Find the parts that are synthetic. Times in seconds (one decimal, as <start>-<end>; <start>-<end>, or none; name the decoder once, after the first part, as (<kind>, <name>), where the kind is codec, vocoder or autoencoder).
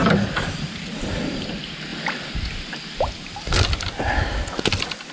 none